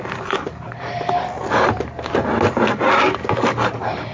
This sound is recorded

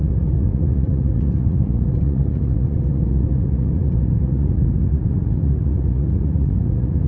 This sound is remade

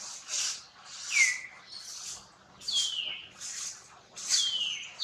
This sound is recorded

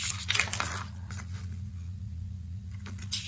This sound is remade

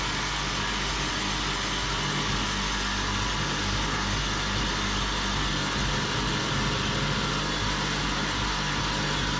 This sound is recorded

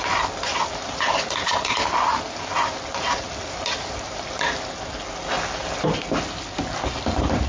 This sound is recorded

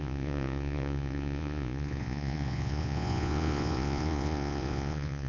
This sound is remade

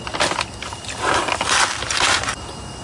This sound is recorded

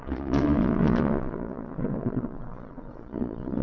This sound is remade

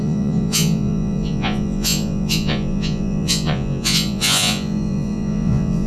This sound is remade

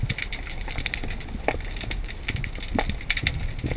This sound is recorded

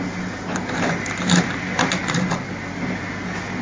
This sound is recorded